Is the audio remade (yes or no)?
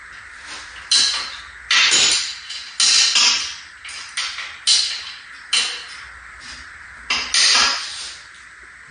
no